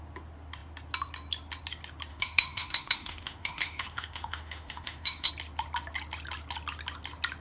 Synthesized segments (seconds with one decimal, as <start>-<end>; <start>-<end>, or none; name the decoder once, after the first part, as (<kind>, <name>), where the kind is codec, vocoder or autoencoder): 2.1-5.3 (autoencoder, DAC-VAE)